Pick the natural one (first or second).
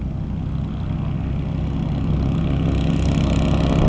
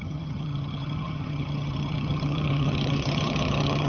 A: first